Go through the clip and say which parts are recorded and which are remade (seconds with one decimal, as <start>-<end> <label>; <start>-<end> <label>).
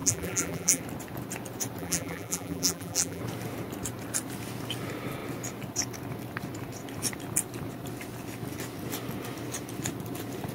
0.0-0.8 remade; 0.8-1.8 recorded; 1.8-3.2 remade; 3.2-10.5 recorded